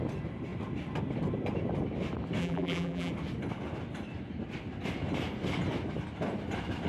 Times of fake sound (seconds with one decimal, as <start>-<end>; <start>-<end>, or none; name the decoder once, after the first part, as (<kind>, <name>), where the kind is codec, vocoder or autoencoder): 2.4-3.1 (vocoder, BigVGAN v2)